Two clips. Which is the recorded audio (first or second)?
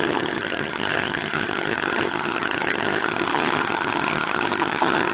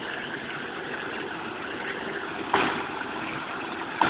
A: second